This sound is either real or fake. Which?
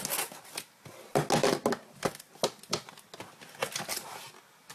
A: real